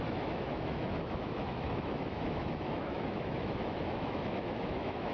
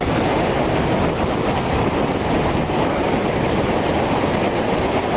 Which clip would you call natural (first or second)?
second